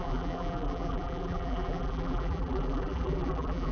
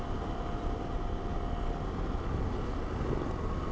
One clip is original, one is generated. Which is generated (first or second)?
first